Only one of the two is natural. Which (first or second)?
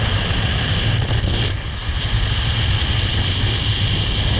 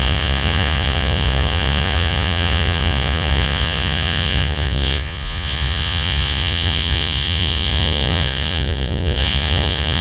first